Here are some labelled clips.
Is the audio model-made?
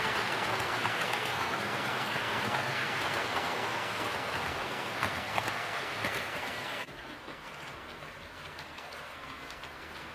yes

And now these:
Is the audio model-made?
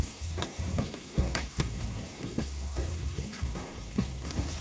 yes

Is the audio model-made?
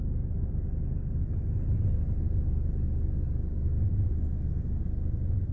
no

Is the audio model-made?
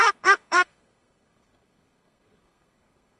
yes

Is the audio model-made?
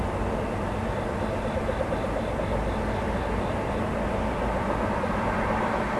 no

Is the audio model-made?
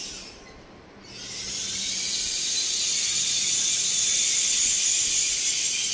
no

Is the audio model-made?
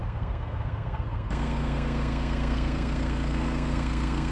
yes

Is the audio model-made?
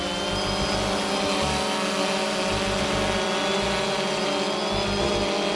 no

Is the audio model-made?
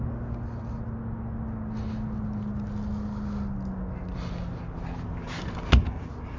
no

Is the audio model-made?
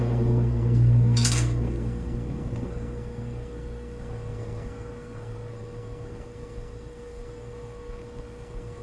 yes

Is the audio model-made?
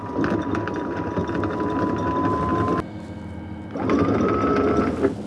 no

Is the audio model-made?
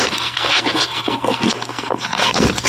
yes